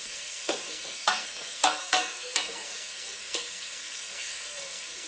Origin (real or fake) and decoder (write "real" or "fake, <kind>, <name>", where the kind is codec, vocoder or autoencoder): fake, codec, SNAC